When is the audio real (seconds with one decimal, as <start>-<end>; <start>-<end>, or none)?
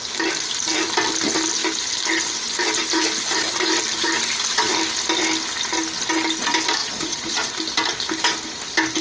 0.0-6.8; 7.5-9.0